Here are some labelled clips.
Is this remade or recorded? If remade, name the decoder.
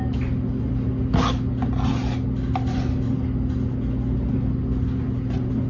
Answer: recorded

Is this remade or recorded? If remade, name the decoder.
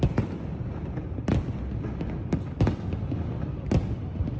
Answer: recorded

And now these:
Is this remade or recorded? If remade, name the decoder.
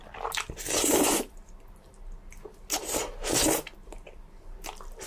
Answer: recorded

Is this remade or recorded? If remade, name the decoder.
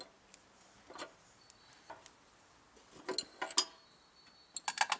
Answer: recorded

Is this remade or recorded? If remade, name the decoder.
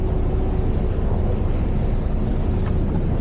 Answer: recorded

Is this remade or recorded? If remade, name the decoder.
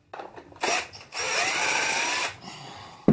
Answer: recorded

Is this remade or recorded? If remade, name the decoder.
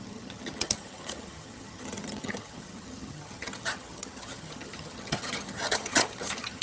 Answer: remade, vocoder, HiFi-GAN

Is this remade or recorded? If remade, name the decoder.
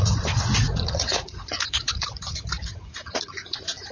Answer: remade, vocoder, Vocos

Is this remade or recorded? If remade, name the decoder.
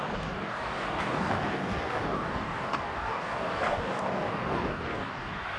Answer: remade, codec, DAC